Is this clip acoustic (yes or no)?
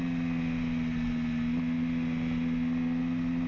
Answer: yes